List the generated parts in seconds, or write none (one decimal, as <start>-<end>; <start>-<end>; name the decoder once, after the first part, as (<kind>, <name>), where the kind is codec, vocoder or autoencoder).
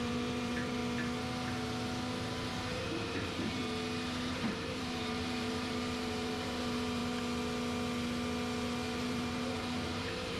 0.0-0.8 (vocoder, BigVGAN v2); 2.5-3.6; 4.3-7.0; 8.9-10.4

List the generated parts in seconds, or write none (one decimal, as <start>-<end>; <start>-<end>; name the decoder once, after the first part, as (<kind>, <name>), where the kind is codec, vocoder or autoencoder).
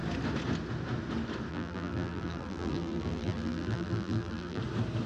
1.5-4.6 (vocoder, BigVGAN v2)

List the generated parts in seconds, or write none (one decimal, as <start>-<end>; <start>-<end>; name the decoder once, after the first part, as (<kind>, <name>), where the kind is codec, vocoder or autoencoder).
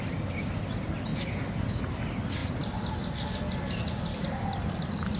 none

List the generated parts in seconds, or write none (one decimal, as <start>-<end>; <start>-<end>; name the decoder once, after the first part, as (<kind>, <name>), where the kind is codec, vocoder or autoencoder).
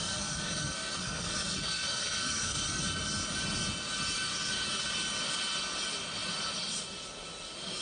0.0-2.8 (codec, SNAC)